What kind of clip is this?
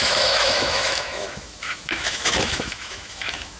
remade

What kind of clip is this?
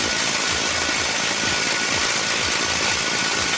recorded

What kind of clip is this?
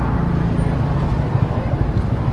recorded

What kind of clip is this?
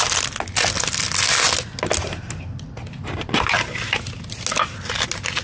recorded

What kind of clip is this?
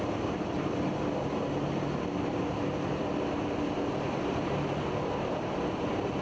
recorded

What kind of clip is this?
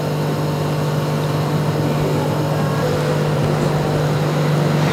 recorded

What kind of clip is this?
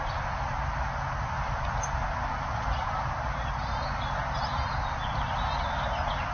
recorded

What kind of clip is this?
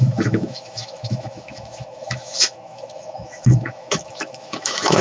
remade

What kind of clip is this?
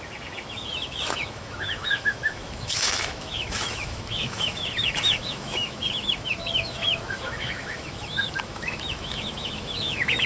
remade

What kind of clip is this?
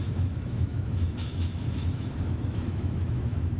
remade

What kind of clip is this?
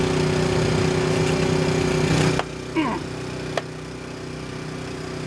recorded